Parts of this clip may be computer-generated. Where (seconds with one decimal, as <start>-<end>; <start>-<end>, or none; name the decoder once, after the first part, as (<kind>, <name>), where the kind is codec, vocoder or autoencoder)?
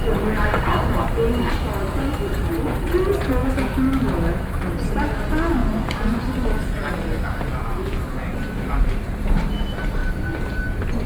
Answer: 3.4-4.6 (autoencoder, DAC-VAE)